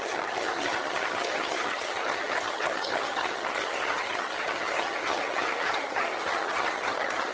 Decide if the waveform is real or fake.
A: fake